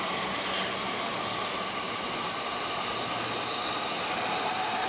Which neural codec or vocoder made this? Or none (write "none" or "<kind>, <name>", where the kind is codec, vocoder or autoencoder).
none